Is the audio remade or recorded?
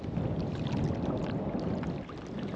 recorded